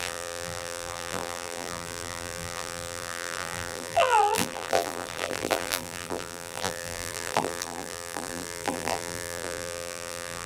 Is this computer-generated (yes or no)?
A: yes